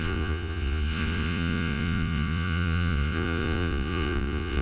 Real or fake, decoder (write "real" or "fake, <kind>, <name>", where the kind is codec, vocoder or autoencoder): fake, vocoder, Vocos